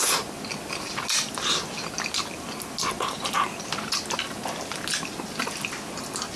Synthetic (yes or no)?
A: no